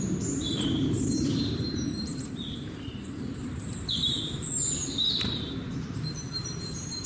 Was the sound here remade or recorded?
remade